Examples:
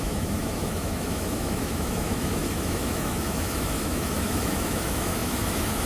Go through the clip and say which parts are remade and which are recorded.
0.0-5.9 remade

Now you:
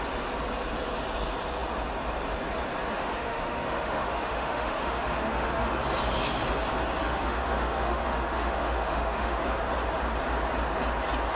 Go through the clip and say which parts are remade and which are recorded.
0.0-2.9 recorded; 2.9-5.7 remade; 5.7-7.0 recorded; 7.0-9.4 remade; 9.4-11.4 recorded

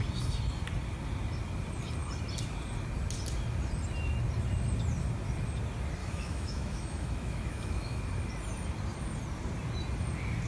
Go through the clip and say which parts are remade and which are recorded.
0.0-6.0 recorded; 6.0-8.0 remade; 8.0-10.5 recorded

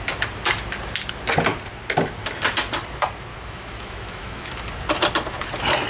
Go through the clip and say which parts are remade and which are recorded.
0.0-3.3 recorded; 3.3-4.7 remade; 4.7-5.9 recorded

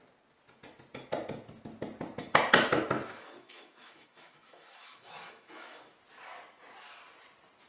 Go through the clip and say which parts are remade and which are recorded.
0.0-3.0 recorded; 3.0-5.9 remade; 5.9-7.7 recorded

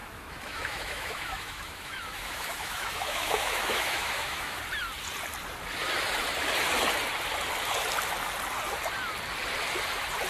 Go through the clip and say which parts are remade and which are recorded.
0.0-4.6 remade; 4.6-10.3 recorded

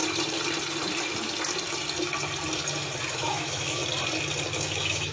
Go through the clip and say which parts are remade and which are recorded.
0.0-3.1 recorded; 3.1-3.8 remade; 3.8-4.6 recorded; 4.6-5.1 remade